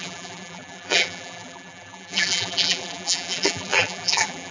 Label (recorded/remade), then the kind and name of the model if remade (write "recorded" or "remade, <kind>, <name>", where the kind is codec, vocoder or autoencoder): remade, vocoder, BigVGAN v2